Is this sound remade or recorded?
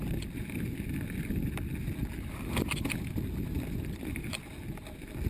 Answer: recorded